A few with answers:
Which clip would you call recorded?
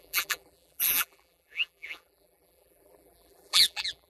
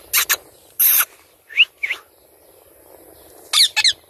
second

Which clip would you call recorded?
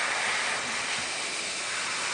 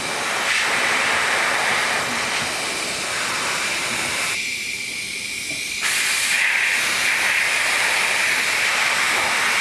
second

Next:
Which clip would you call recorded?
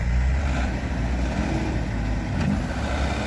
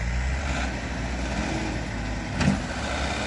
second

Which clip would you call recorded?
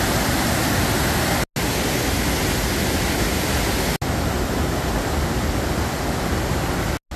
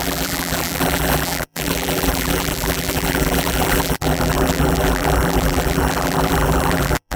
first